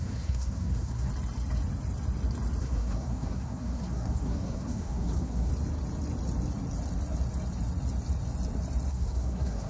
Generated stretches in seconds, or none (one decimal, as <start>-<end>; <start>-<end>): 0.0-1.1; 2.6-5.5; 8.9-9.7